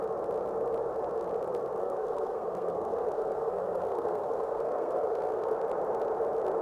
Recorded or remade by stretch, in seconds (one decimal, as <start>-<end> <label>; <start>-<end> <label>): 0.0-1.8 recorded; 1.8-5.5 remade; 5.5-6.6 recorded